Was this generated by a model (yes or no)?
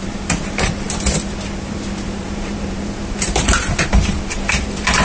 yes